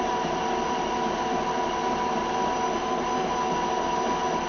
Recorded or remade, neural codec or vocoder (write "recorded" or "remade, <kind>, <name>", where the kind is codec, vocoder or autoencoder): recorded